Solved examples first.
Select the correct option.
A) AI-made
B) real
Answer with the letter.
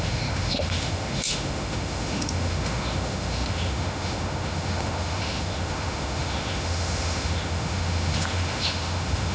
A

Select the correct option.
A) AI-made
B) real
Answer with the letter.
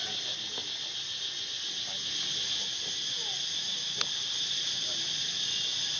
B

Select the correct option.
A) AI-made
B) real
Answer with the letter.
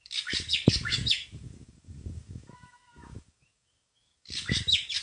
A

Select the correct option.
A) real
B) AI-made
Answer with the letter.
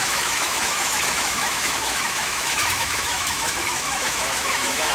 B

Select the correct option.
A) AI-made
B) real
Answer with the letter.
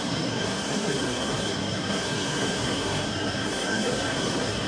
A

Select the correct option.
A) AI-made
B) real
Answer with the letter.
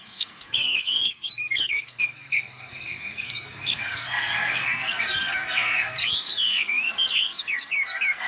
A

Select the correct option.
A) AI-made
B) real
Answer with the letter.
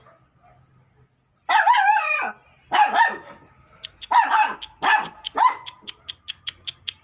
B